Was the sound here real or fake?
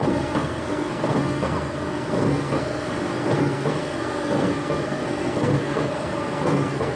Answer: fake